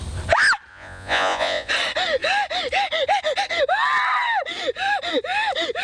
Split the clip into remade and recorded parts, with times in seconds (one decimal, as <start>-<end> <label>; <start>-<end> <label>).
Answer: 0.0-0.7 recorded; 0.7-1.7 remade; 1.7-5.8 recorded